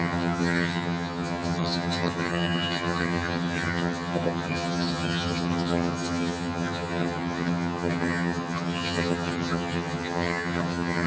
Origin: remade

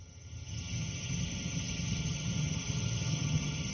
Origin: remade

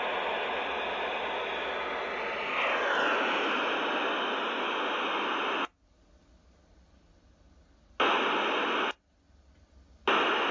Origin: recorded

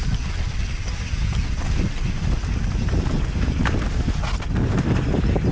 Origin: recorded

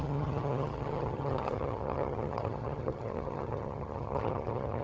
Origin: remade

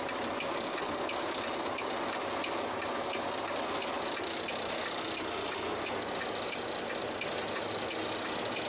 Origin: recorded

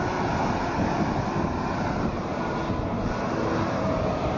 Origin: recorded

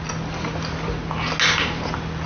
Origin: recorded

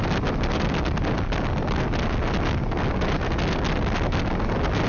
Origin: recorded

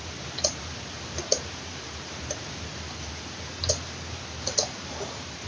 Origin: recorded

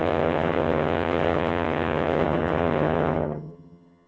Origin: remade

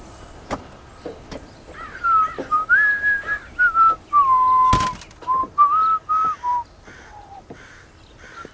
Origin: recorded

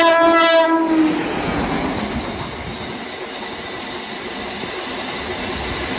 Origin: recorded